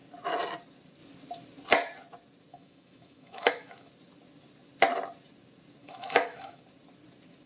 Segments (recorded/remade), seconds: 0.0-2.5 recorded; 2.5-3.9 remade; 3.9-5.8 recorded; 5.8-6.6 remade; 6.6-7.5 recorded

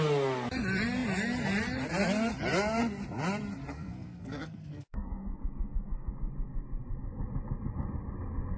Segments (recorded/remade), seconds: 0.0-3.7 recorded; 3.7-6.1 remade; 6.1-8.6 recorded

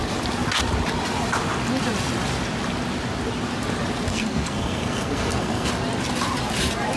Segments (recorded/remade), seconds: 0.0-4.1 recorded; 4.1-5.7 remade; 5.7-7.0 recorded

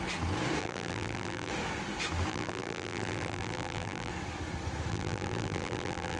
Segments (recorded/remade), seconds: 0.0-0.6 recorded; 0.6-1.5 remade; 1.5-2.3 recorded; 2.3-4.1 remade; 4.1-4.9 recorded; 4.9-6.2 remade

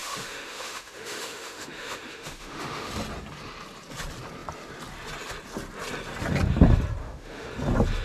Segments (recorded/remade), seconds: 0.0-2.9 remade; 2.9-7.0 recorded; 7.0-7.5 remade; 7.5-8.0 recorded

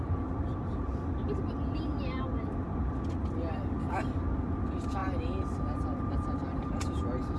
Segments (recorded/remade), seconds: 0.0-7.4 recorded